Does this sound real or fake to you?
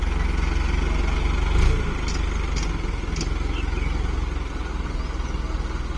real